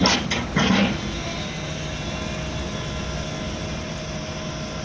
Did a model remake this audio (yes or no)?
no